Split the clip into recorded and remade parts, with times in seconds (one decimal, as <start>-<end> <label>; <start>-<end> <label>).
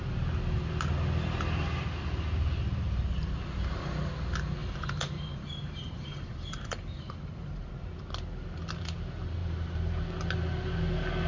0.0-4.6 recorded; 4.6-7.7 remade; 7.7-9.4 recorded; 9.4-10.0 remade; 10.0-11.3 recorded